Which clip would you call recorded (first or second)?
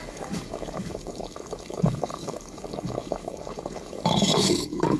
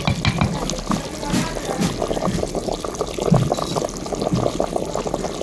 second